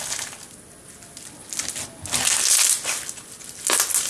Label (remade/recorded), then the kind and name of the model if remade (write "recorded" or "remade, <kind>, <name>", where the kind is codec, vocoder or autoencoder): recorded